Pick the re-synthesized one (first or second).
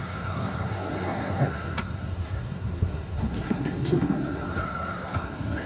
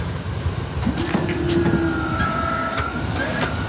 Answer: first